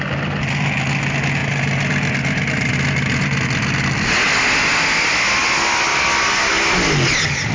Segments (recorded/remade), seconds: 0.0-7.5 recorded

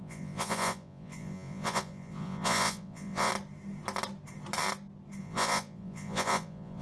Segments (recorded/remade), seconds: 0.0-3.3 remade; 3.3-5.2 recorded; 5.2-6.8 remade

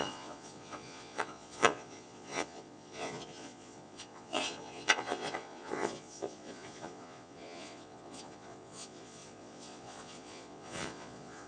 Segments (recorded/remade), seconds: 0.0-11.5 remade

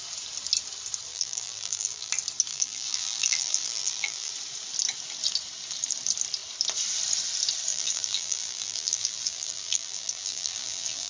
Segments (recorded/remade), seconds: 0.0-1.1 recorded; 1.1-2.1 remade; 2.1-2.5 recorded; 2.5-4.3 remade; 4.3-7.7 recorded; 7.7-11.1 remade

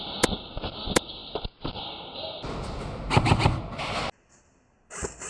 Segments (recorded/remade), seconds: 0.0-5.3 recorded

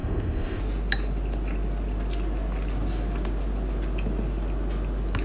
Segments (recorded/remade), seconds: 0.0-0.6 remade; 0.6-5.2 recorded

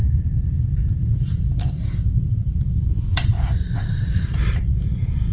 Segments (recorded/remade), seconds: 0.0-0.9 recorded; 0.9-5.3 remade